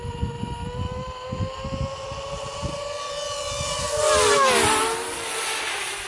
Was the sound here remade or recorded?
recorded